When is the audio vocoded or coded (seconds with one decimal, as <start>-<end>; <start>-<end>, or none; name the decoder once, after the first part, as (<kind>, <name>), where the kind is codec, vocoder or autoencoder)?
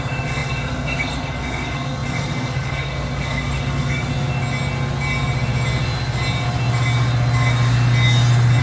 0.0-4.1 (codec, SNAC)